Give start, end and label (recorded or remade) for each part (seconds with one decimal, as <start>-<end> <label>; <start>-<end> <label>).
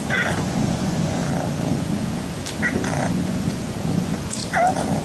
0.0-1.2 remade; 1.2-1.7 recorded; 1.7-2.4 remade; 2.4-3.0 recorded; 3.0-4.4 remade; 4.4-5.0 recorded